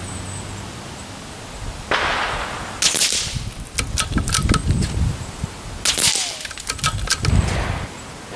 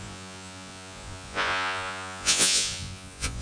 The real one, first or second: first